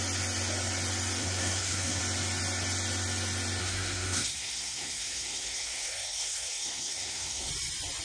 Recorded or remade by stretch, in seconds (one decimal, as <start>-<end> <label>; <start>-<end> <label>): 0.0-1.2 recorded; 1.2-2.0 remade; 2.0-3.6 recorded; 3.6-7.5 remade; 7.5-8.0 recorded